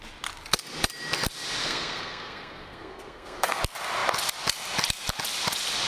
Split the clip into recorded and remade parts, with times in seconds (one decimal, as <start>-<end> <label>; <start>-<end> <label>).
0.0-1.6 recorded; 1.6-3.6 remade; 3.6-5.9 recorded

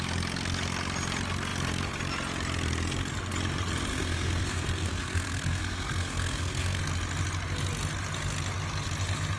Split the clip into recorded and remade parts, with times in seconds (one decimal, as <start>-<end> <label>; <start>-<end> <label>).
0.0-3.9 recorded; 3.9-6.8 remade; 6.8-9.4 recorded

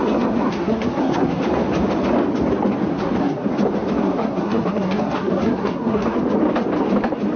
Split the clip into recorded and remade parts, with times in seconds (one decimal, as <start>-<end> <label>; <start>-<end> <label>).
0.0-1.4 remade; 1.4-2.9 recorded; 2.9-3.5 remade; 3.5-4.0 recorded; 4.0-6.2 remade; 6.2-7.4 recorded

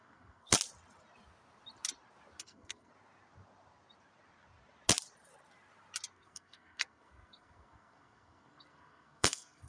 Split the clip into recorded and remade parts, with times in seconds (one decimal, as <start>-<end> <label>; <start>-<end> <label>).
0.0-0.5 remade; 0.5-2.4 recorded; 2.4-2.9 remade; 2.9-6.1 recorded; 6.1-9.7 remade

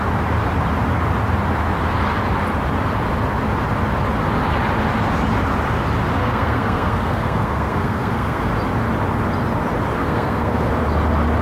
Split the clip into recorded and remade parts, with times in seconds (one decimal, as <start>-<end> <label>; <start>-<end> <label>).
0.0-6.2 recorded; 6.2-8.5 remade; 8.5-10.0 recorded; 10.0-10.7 remade; 10.7-11.4 recorded

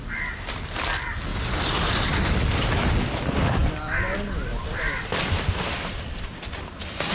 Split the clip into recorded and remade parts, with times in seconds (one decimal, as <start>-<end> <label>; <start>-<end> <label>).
0.0-7.1 recorded

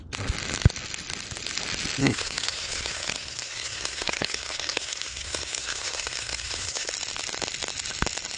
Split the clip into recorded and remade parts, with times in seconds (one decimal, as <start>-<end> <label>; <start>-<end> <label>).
0.0-2.0 recorded; 2.0-6.9 remade; 6.9-8.4 recorded